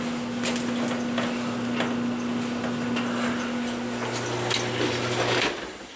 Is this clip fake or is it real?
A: real